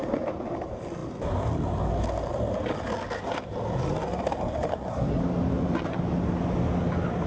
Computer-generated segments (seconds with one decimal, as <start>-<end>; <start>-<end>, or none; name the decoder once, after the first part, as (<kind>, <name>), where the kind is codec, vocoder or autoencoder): 4.7-5.2 (codec, SNAC)